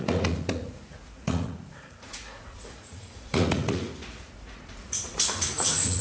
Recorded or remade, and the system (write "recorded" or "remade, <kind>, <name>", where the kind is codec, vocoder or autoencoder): remade, vocoder, Vocos